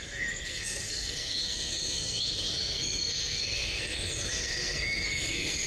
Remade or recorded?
remade